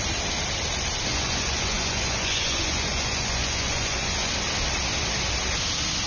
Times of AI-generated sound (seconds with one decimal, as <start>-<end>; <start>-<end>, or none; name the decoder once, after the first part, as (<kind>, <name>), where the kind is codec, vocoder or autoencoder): 1.1-4.3 (vocoder, Vocos)